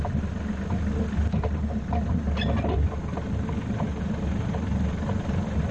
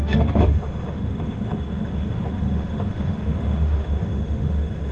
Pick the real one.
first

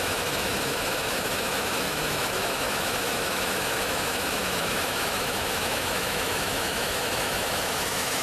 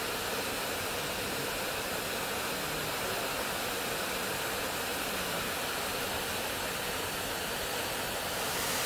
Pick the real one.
second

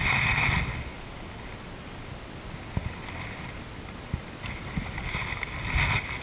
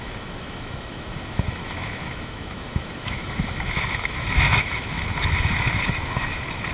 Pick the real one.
first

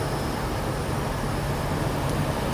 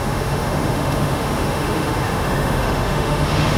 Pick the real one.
first